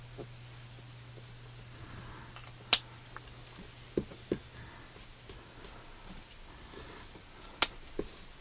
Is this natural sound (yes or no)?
yes